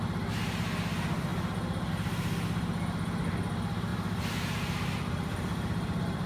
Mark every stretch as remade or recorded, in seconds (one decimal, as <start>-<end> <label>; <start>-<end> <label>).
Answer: 0.0-3.9 recorded; 3.9-6.3 remade